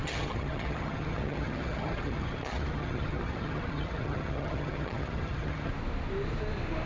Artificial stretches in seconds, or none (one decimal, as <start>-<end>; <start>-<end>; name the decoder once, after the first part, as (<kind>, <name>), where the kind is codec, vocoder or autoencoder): 0.0-5.7 (vocoder, HiFi-GAN)